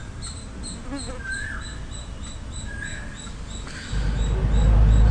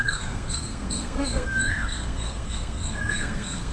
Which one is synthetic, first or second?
second